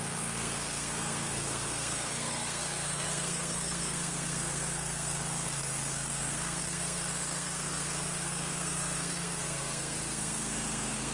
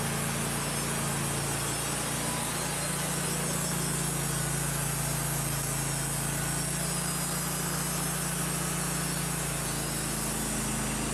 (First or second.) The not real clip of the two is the first